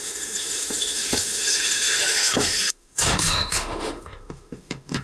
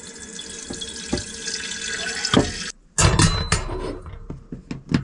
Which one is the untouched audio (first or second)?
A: second